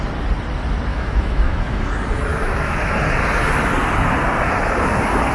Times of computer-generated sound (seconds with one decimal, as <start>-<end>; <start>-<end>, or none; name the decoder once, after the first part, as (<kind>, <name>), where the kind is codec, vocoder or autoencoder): 0.9-1.9 (autoencoder, DAC-VAE); 2.3-2.9